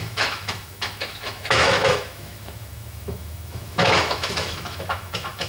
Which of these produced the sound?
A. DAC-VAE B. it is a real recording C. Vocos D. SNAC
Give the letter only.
A